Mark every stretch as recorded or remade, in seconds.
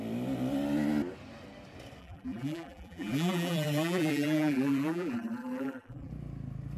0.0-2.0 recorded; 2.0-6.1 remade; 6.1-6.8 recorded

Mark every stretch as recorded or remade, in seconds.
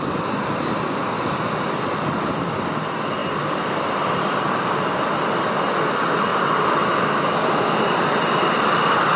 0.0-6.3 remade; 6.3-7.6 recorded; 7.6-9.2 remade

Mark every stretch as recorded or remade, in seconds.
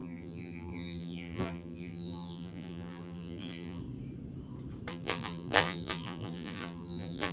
0.0-3.8 remade; 3.8-4.9 recorded; 4.9-7.3 remade